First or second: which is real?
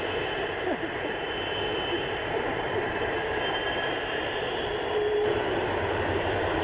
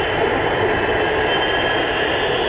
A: second